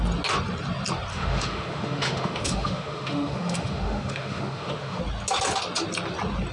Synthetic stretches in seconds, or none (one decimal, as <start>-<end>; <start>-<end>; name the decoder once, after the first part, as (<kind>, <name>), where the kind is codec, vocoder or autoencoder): 1.1-5.0 (autoencoder, DAC-VAE)